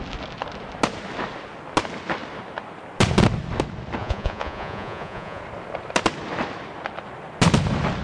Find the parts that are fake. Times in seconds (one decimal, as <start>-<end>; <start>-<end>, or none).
4.0-5.4